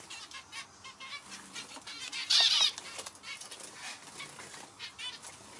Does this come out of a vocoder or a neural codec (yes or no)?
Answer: no